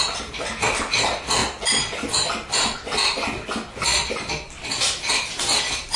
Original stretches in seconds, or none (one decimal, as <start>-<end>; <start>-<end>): 0.0-6.0